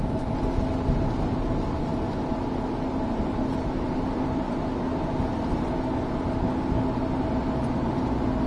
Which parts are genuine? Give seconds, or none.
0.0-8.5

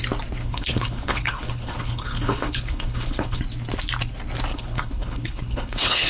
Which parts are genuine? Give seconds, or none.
0.0-0.4; 3.4-4.5

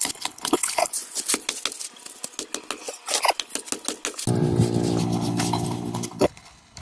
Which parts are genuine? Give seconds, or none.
0.9-5.0